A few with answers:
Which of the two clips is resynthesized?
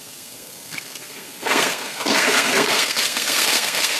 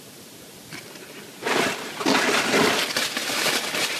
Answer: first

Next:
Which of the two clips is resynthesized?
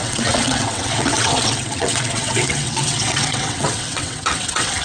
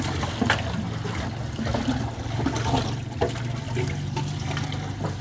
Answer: first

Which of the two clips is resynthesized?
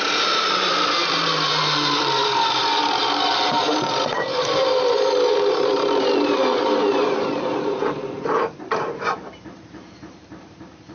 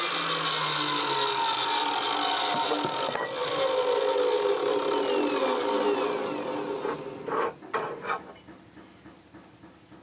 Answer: first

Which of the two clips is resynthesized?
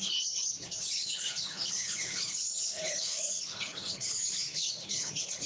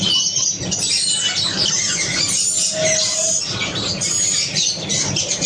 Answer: first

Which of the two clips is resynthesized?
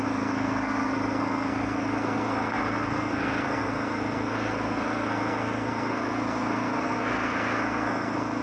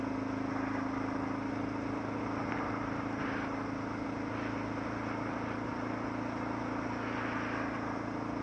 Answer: first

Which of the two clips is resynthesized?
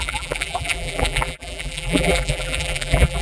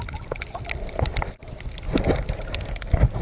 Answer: first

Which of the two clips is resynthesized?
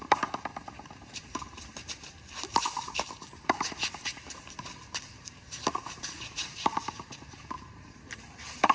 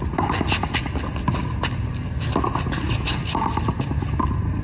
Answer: first